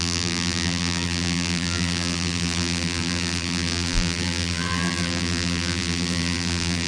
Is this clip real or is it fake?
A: fake